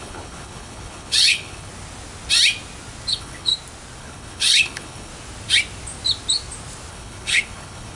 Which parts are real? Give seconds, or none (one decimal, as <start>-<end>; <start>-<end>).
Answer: 1.7-3.1; 3.5-4.0; 5.1-6.9